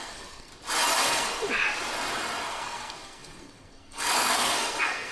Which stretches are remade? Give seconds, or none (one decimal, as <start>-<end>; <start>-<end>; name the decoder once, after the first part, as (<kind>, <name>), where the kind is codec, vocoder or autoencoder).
0.0-0.5 (codec, SNAC); 1.0-1.5; 2.5-5.1